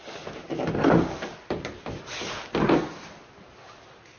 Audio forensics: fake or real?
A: real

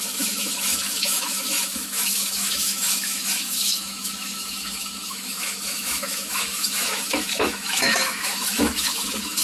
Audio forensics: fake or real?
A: fake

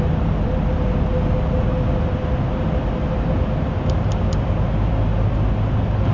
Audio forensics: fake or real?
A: real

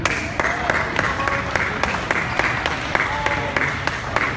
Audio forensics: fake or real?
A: real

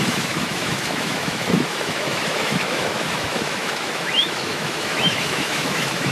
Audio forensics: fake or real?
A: fake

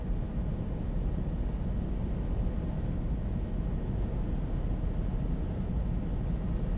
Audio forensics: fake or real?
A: real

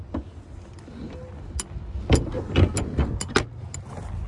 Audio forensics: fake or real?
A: real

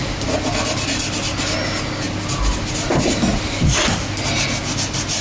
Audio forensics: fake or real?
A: real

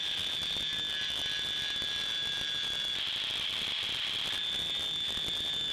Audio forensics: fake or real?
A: real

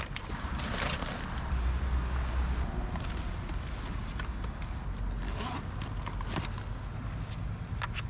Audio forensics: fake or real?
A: real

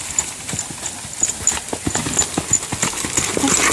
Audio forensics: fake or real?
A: real